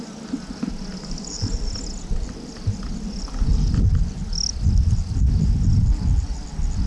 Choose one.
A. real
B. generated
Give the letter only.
A